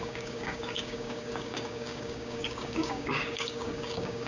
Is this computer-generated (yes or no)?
yes